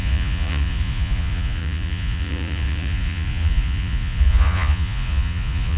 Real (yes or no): no